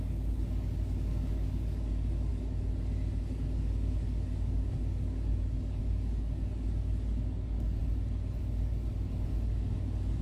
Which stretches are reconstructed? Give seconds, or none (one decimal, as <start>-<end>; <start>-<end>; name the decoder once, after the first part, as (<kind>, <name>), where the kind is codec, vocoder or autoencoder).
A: 0.0-7.8 (codec, DAC); 8.4-10.2